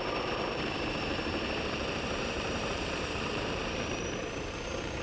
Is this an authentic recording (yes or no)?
no